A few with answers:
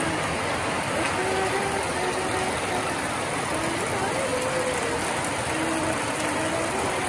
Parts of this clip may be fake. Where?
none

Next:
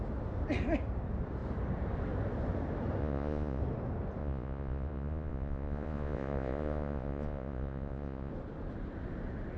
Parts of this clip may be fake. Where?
3.0-3.6 (vocoder, Vocos); 4.2-8.3

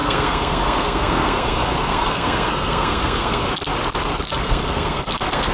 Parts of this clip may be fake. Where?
0.0-3.4 (codec, SNAC); 4.3-5.5

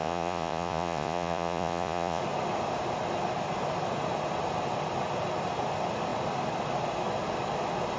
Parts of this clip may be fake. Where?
0.0-2.2 (vocoder, Vocos)

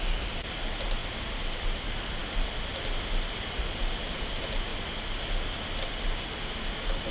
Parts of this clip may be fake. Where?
0.0-1.0 (vocoder, BigVGAN v2); 1.6-4.7; 5.8-7.1

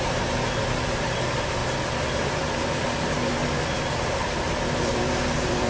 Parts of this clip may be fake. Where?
0.0-1.6 (vocoder, BigVGAN v2); 3.0-3.4; 4.0-5.7

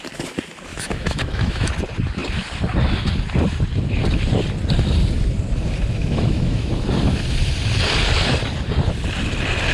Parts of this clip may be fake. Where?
0.7-1.7 (autoencoder, DAC-VAE); 6.0-6.7

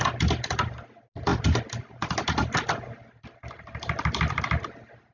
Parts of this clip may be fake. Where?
1.3-4.4 (vocoder, BigVGAN v2)